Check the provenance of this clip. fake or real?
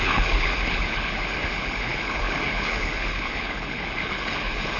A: fake